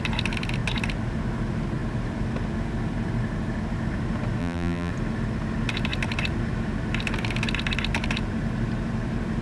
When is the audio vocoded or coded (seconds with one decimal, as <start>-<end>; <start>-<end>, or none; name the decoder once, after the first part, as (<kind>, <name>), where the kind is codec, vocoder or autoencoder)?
4.4-4.9 (vocoder, BigVGAN v2)